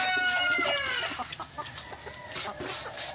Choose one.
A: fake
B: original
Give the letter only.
B